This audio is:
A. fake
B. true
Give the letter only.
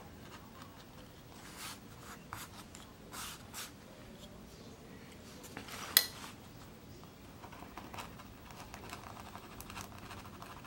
B